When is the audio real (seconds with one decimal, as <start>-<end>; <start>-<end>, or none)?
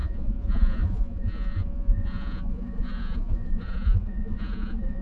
none